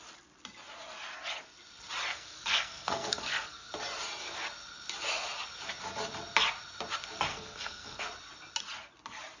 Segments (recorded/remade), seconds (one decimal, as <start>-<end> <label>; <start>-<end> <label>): 0.0-2.1 recorded; 2.1-3.7 remade; 3.7-7.3 recorded; 7.3-8.0 remade; 8.0-9.4 recorded